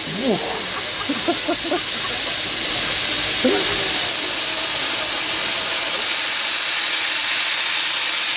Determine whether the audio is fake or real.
real